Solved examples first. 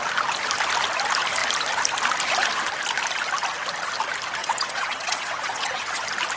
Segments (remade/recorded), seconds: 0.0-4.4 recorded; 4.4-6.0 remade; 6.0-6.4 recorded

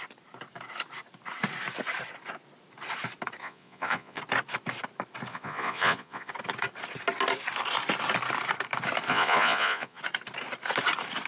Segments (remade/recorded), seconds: 0.0-3.4 recorded; 3.4-4.2 remade; 4.2-5.3 recorded; 5.3-6.3 remade; 6.3-9.1 recorded; 9.1-10.0 remade; 10.0-11.3 recorded